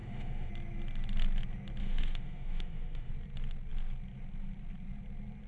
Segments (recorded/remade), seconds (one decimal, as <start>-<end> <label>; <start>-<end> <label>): 0.0-0.5 remade; 0.5-1.8 recorded; 1.8-3.1 remade; 3.1-5.5 recorded

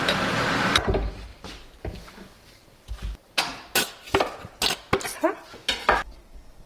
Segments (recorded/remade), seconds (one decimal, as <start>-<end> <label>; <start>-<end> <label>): 0.0-6.7 recorded

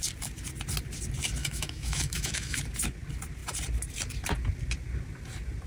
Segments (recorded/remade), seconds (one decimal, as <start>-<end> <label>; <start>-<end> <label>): 0.0-1.4 recorded; 1.4-2.6 remade; 2.6-5.7 recorded

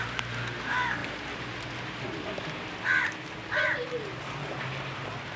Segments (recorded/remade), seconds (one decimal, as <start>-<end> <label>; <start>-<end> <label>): 0.0-5.4 recorded

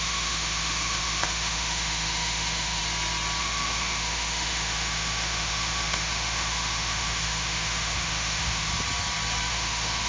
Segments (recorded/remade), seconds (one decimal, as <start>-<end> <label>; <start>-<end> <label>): 0.0-2.8 remade; 2.8-3.4 recorded; 3.4-8.7 remade; 8.7-9.5 recorded; 9.5-10.1 remade

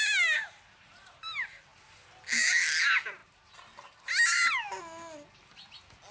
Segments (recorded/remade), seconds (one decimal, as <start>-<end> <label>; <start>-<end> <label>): 0.0-6.1 recorded